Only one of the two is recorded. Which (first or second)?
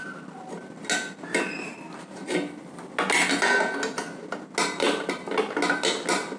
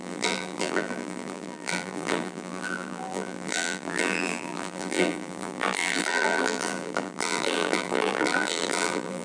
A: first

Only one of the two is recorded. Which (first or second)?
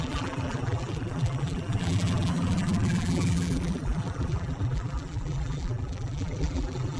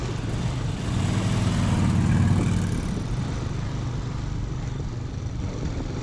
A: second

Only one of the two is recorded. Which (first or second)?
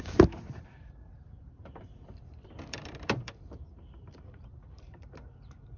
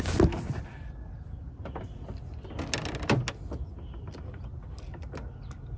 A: second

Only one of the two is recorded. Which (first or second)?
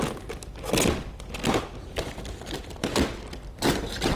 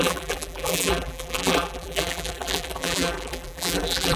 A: first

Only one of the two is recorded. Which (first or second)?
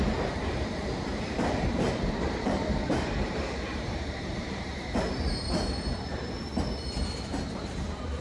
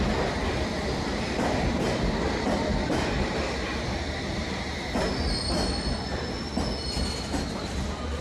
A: second